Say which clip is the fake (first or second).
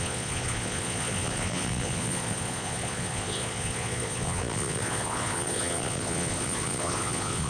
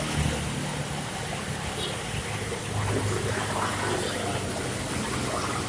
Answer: first